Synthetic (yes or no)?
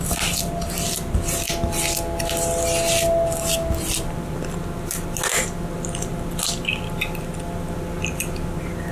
no